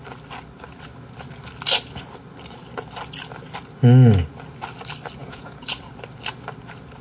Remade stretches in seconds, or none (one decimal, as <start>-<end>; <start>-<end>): 5.2-5.9